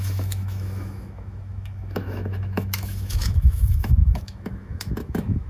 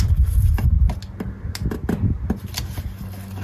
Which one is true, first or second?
second